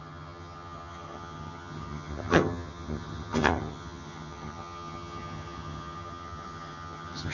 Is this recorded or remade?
remade